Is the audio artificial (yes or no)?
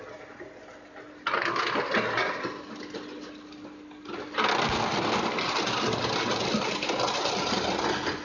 no